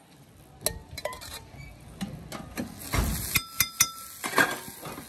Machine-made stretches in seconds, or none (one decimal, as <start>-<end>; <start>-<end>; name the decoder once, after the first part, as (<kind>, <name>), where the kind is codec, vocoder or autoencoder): 0.8-1.4 (vocoder, BigVGAN v2)